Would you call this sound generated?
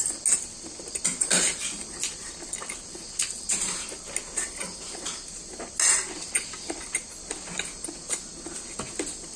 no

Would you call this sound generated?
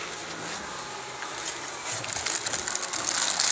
no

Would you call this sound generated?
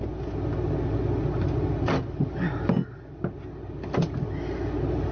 no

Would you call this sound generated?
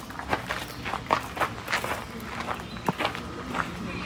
no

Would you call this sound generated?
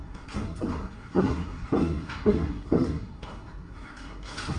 yes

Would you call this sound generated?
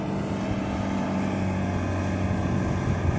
no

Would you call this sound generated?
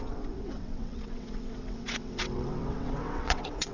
yes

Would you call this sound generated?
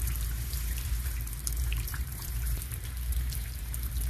yes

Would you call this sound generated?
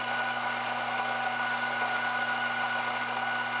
no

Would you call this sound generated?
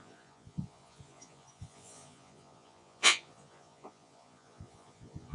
yes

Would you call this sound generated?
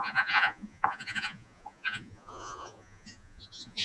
yes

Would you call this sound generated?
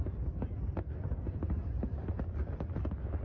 no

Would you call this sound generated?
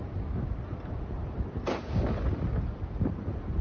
no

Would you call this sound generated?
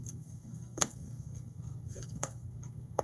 yes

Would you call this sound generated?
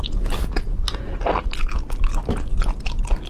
no